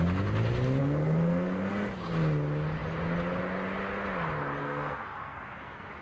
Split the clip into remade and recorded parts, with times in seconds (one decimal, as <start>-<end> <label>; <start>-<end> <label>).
0.0-0.8 recorded; 0.8-1.7 remade; 1.7-4.6 recorded; 4.6-6.0 remade